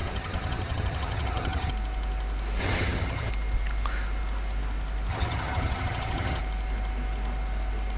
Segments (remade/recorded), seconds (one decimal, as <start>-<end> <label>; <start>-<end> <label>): 0.0-1.7 remade; 1.7-2.6 recorded; 2.6-3.3 remade; 3.3-5.1 recorded; 5.1-6.4 remade; 6.4-8.0 recorded